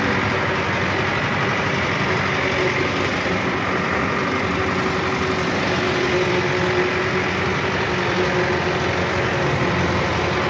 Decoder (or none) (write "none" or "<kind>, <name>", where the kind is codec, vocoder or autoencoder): none